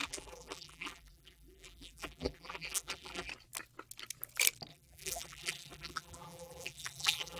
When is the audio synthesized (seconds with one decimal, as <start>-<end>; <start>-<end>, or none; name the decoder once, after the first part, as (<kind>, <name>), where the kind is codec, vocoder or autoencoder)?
0.0-3.3 (vocoder, BigVGAN v2); 4.7-7.4